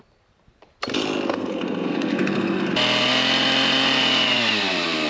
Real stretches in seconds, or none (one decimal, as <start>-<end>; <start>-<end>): 0.0-1.3; 2.7-5.1